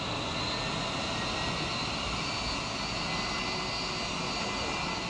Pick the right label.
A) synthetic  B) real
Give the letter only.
B